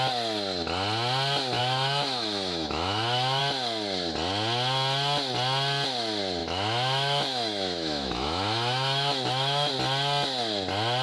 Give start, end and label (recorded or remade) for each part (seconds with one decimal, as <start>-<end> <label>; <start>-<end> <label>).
0.0-1.6 recorded; 1.6-3.4 remade; 3.4-6.4 recorded; 6.4-9.7 remade; 9.7-11.0 recorded